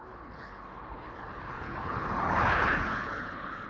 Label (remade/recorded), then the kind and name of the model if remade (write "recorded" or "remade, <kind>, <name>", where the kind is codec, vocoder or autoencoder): remade, codec, HILCodec